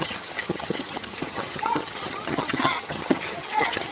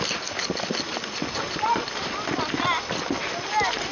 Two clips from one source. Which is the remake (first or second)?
first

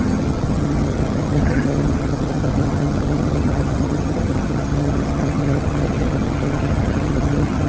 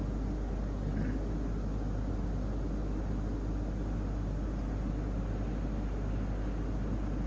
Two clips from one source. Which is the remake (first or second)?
first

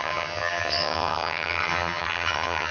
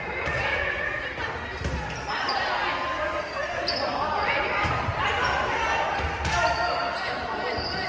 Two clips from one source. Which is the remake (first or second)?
first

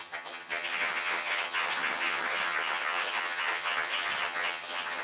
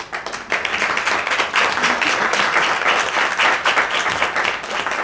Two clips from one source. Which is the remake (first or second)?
first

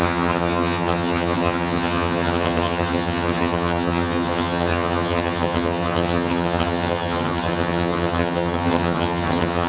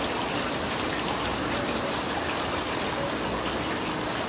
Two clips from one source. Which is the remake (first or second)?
first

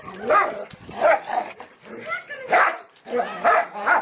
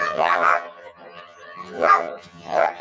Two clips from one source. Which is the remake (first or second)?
second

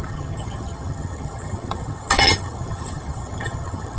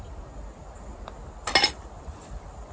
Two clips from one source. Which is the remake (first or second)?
first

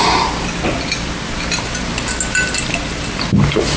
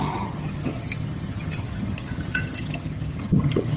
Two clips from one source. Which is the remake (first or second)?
second